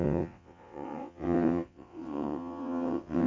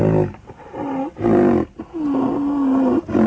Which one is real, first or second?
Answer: second